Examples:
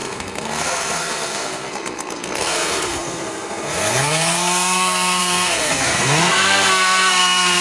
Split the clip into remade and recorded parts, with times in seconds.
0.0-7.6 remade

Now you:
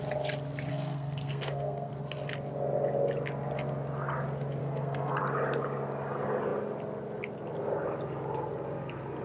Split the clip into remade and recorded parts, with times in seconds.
0.0-0.7 recorded; 0.7-1.9 remade; 1.9-4.6 recorded; 4.6-5.2 remade; 5.2-9.2 recorded

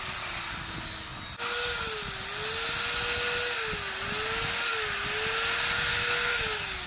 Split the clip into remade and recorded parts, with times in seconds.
0.0-5.9 recorded; 5.9-6.4 remade; 6.4-6.9 recorded

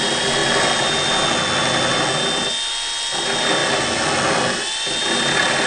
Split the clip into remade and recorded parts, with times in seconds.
0.0-5.7 recorded

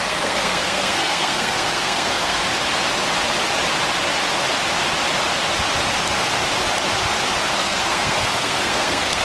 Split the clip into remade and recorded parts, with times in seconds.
0.0-2.4 remade; 2.4-7.5 recorded; 7.5-9.2 remade

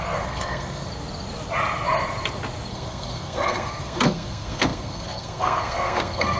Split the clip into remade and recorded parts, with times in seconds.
0.0-0.9 remade; 0.9-2.7 recorded; 2.7-6.4 remade

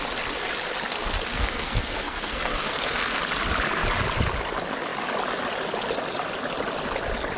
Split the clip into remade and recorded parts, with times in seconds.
0.0-0.9 recorded; 0.9-3.2 remade; 3.2-7.4 recorded

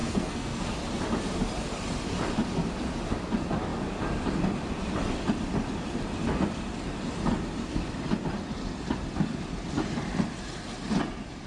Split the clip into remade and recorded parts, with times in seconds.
0.0-0.7 remade; 0.7-11.5 recorded